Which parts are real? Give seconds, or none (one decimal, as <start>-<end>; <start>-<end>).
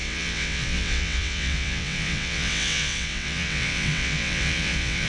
none